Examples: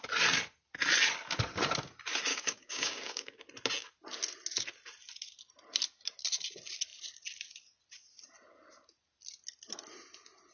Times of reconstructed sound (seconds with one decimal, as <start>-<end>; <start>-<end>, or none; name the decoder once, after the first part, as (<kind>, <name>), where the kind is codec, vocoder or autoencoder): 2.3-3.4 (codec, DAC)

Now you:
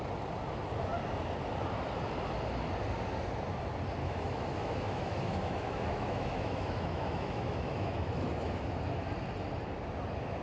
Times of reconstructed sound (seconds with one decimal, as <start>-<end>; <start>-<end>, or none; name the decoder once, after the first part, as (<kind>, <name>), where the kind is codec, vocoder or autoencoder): 4.0-8.8 (autoencoder, DAC-VAE)

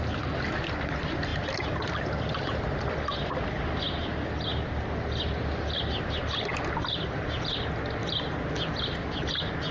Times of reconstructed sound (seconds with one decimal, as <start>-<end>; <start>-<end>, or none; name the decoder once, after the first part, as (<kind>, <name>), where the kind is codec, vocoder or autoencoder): 1.3-3.3 (vocoder, BigVGAN v2)

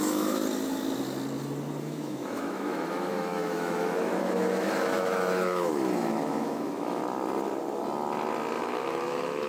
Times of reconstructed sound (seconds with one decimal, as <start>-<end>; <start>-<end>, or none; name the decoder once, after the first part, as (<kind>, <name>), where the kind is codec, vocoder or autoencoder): 0.0-0.4 (autoencoder, DAC-VAE); 1.8-7.0; 8.6-9.5

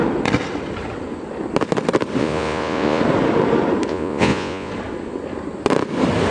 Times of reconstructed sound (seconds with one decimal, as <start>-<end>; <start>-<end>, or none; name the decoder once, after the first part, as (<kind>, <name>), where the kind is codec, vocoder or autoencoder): 2.2-3.0 (vocoder, Vocos); 3.9-4.7

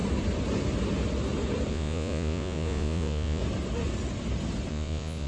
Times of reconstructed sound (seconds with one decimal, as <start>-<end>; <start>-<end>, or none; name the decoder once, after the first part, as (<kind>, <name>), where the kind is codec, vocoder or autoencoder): 1.7-3.4 (vocoder, Vocos); 4.7-5.3